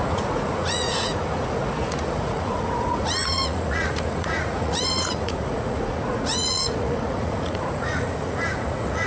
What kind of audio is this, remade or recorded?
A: remade